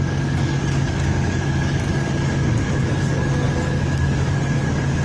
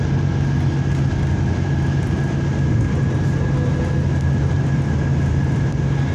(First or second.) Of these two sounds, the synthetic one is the first